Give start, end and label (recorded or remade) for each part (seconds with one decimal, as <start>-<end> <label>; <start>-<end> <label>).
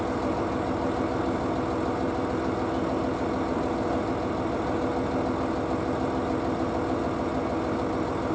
0.0-8.3 recorded